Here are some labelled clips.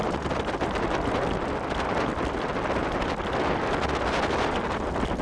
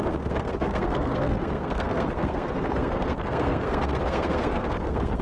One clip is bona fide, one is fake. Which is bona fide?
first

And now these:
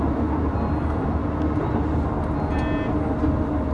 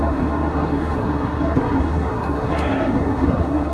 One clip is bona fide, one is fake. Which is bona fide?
first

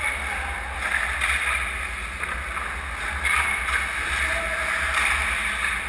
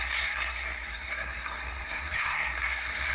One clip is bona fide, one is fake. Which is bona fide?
first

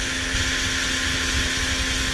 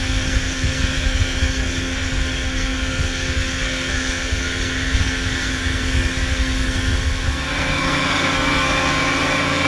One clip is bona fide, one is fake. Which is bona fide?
first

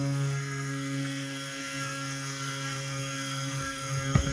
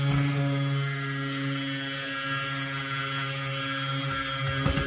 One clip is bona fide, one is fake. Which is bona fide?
second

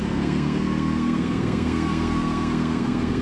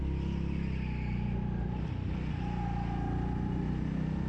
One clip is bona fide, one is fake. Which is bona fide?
second